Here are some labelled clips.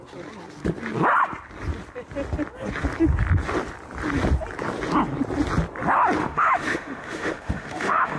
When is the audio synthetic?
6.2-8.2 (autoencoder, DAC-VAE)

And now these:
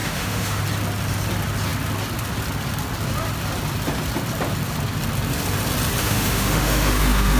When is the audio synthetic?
0.0-0.6 (autoencoder, DAC-VAE); 6.0-7.4

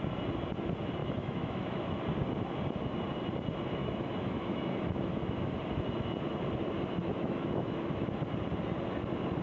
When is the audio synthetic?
1.0-2.0 (autoencoder, DAC-VAE); 3.8-5.6; 7.0-8.2

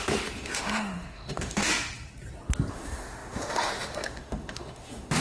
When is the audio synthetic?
0.0-1.7 (autoencoder, DAC-VAE); 2.7-5.2

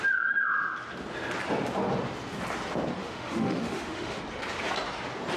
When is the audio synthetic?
3.0-4.2 (autoencoder, DAC-VAE)